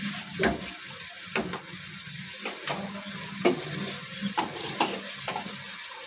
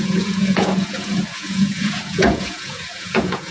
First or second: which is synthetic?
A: second